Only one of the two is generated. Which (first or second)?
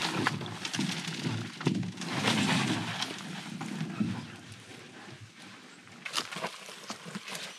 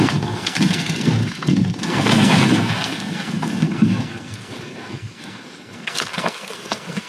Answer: second